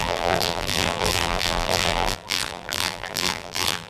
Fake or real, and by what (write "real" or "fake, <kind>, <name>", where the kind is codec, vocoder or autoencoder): fake, vocoder, BigVGAN v2